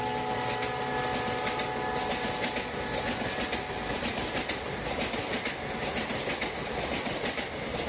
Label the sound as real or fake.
real